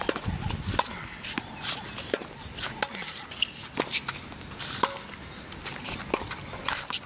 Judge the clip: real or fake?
real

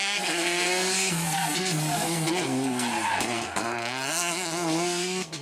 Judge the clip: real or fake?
fake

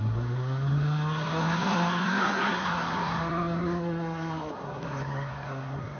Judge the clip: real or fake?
fake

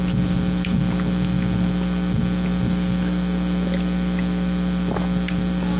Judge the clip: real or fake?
real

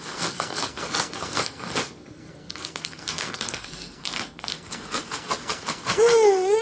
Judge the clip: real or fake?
fake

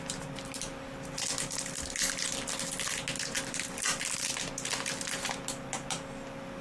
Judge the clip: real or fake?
real